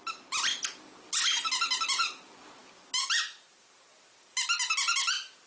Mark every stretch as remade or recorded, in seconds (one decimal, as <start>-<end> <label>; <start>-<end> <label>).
0.0-5.5 recorded